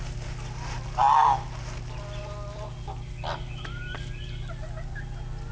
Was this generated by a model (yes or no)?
no